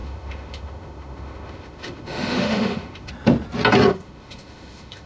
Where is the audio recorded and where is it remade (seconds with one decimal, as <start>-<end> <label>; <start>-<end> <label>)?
0.0-3.1 remade; 3.1-3.9 recorded; 3.9-5.1 remade